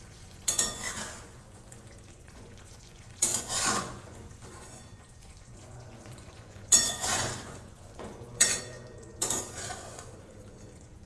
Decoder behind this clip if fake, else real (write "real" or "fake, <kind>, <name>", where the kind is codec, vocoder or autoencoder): fake, vocoder, Vocos